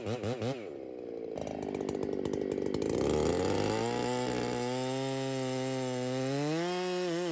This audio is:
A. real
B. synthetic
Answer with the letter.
A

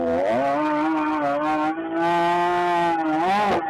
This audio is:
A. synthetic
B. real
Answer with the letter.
B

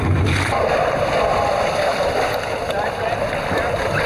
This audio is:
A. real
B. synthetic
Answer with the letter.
A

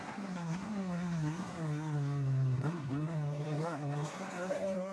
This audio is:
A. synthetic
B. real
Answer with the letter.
A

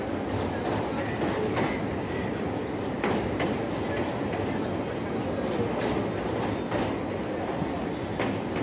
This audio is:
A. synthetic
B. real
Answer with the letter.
B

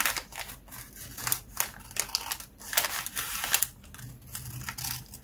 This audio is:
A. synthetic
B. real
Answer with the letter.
B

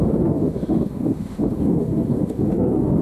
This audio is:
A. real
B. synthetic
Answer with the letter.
B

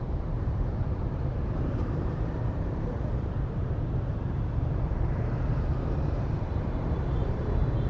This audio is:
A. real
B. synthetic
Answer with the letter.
B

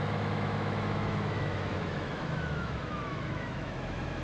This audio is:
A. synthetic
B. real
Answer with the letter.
A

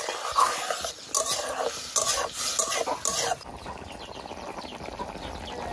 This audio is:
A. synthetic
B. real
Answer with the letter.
B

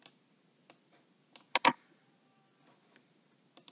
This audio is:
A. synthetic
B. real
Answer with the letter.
B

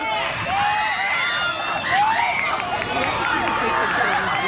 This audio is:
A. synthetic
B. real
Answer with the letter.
B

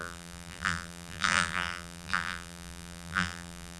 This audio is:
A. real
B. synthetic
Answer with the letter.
B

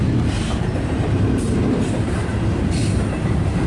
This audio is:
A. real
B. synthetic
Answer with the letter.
B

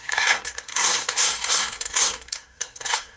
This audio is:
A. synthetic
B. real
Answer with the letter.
A